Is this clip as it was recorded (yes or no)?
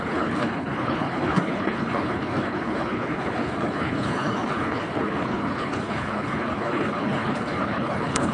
no